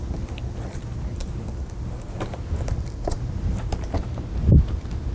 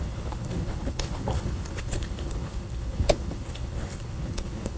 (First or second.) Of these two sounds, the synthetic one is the second